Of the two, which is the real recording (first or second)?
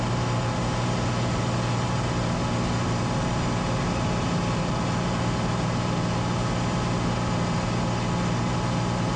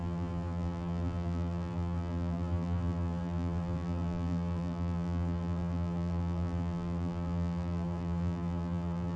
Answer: first